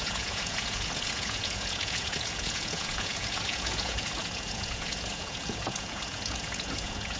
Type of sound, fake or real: fake